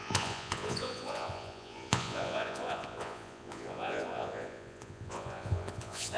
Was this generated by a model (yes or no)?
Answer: yes